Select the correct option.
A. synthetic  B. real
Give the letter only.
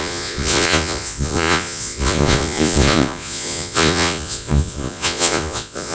A